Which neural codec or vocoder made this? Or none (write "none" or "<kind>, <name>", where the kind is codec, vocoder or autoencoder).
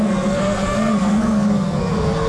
codec, SNAC